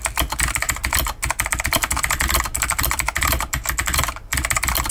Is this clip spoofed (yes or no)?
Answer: no